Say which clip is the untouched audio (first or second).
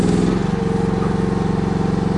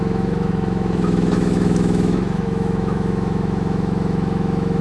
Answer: first